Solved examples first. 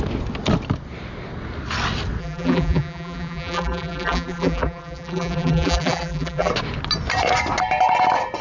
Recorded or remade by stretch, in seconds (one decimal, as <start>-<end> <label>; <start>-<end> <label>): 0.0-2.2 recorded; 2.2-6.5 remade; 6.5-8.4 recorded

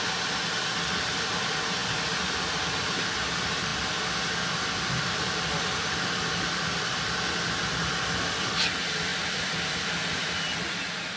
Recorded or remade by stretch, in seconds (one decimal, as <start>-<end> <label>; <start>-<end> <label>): 0.0-1.8 recorded; 1.8-2.3 remade; 2.3-3.7 recorded; 3.7-6.8 remade; 6.8-9.1 recorded; 9.1-11.2 remade

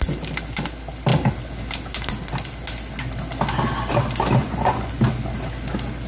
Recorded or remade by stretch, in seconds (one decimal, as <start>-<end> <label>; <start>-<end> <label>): 0.0-4.4 recorded; 4.4-5.0 remade; 5.0-6.1 recorded

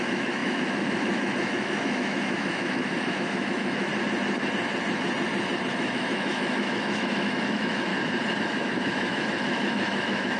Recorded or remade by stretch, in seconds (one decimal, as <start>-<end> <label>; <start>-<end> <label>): 0.0-3.9 remade; 3.9-5.7 recorded; 5.7-7.9 remade; 7.9-8.4 recorded; 8.4-10.4 remade